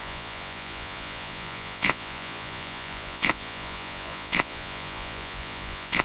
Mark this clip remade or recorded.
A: remade